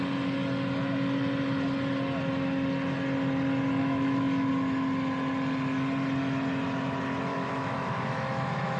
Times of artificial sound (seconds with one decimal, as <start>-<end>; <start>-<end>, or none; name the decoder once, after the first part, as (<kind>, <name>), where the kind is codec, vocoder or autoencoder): 3.8-4.5 (autoencoder, DAC-VAE); 7.3-8.8